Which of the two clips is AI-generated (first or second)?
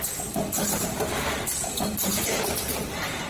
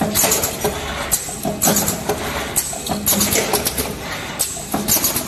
first